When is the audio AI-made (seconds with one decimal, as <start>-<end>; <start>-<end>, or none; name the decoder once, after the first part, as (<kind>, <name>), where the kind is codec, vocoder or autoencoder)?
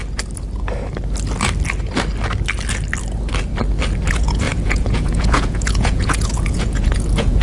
4.1-7.4 (vocoder, Vocos)